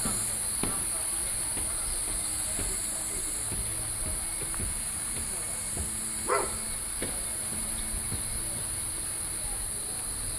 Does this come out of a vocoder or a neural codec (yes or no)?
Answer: no